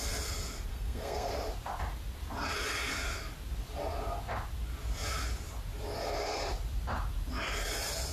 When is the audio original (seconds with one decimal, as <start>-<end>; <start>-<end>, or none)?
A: 0.0-0.7; 1.3-8.1